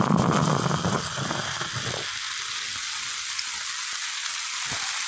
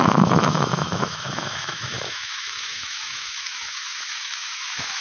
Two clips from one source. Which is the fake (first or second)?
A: second